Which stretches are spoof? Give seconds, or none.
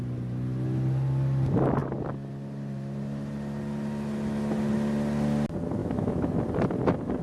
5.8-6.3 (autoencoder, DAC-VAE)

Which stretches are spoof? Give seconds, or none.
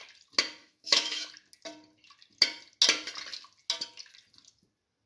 0.6-1.3 (autoencoder, DAC-VAE)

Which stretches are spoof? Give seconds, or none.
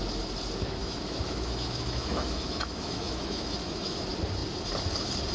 0.8-4.0 (autoencoder, DAC-VAE)